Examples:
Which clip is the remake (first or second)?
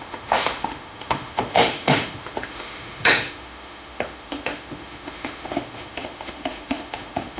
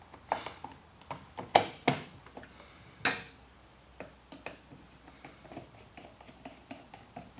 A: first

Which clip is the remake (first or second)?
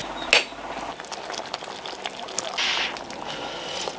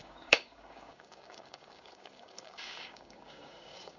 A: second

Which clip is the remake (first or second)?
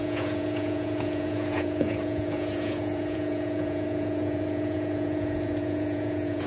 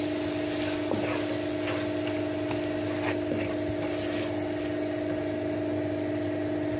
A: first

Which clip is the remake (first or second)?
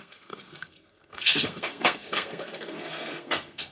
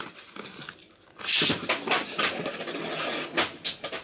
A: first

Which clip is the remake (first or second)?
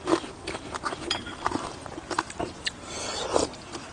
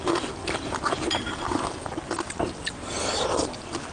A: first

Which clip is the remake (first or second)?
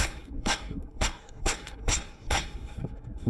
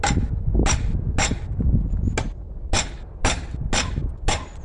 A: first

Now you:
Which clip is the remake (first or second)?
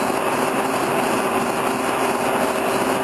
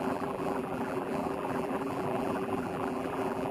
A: second